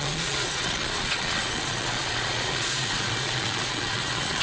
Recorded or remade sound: remade